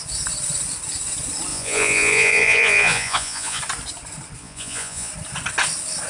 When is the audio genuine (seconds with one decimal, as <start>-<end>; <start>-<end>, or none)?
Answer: 0.0-1.5; 3.6-4.4; 5.1-6.1